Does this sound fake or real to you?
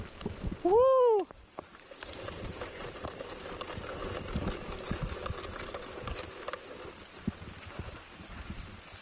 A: real